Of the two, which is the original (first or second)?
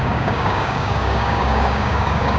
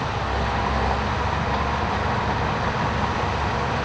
second